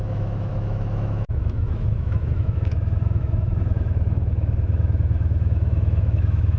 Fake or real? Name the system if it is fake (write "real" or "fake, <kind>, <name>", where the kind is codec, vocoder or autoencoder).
fake, autoencoder, DAC-VAE